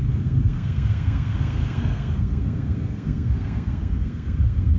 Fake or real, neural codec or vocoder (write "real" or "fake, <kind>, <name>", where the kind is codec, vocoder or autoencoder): fake, codec, SNAC